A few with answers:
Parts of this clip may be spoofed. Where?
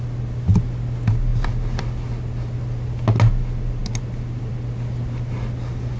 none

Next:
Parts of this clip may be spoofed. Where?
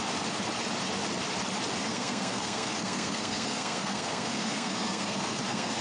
1.9-5.8 (codec, SNAC)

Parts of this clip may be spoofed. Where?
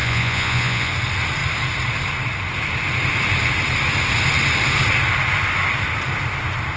0.0-0.9 (vocoder, Vocos)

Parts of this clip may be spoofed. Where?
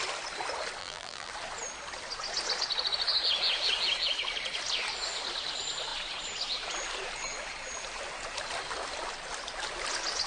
0.8-1.3 (vocoder, BigVGAN v2)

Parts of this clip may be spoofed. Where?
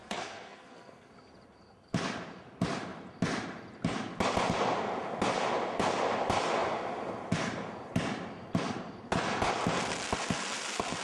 0.0-1.1 (codec, SNAC)